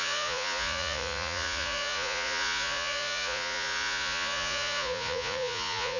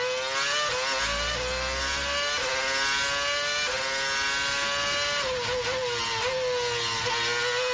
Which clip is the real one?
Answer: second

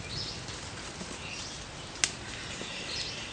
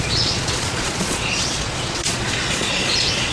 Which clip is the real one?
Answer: first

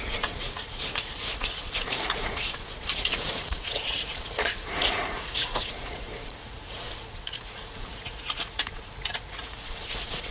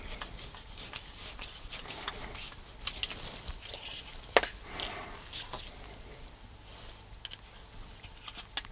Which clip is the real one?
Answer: second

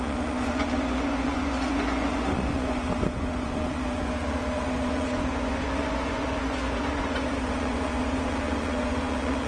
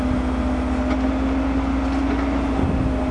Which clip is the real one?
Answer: second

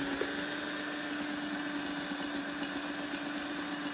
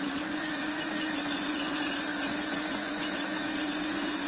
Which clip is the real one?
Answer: first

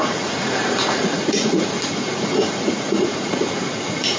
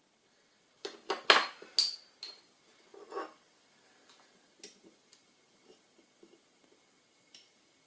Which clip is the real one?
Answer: second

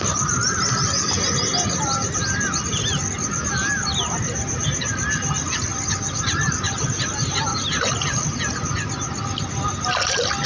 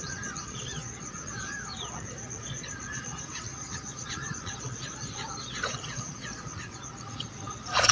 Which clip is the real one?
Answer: first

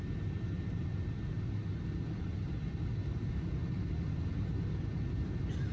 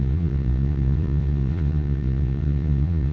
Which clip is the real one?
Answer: first